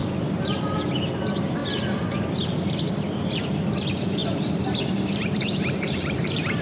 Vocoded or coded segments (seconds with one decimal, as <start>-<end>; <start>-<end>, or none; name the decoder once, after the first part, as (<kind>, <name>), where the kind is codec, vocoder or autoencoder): 0.0-0.6 (vocoder, BigVGAN v2); 4.2-6.6